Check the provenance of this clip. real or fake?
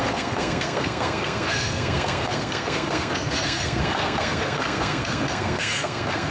fake